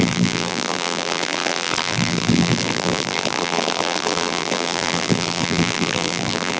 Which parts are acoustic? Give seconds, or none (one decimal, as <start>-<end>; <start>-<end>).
none